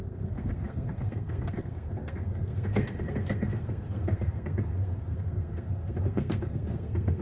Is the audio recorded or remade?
remade